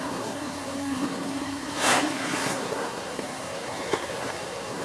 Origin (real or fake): fake